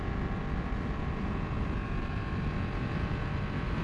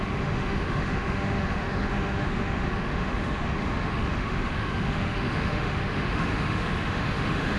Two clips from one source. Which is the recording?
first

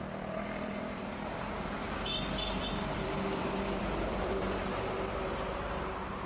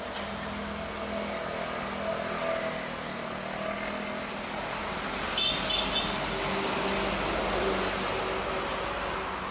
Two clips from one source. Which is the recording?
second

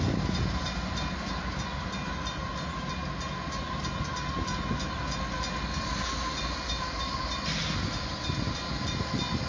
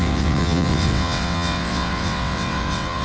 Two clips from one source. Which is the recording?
first